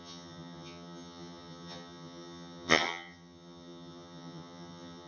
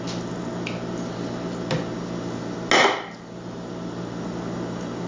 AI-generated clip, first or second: first